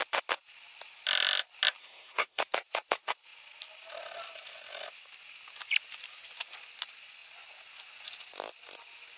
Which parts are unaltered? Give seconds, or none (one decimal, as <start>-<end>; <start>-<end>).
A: 0.0-1.8; 2.4-9.2